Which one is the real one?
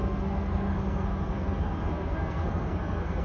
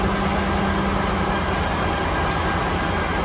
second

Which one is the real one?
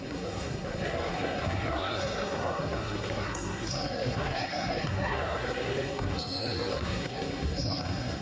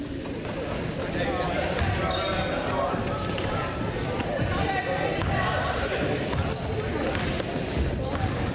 second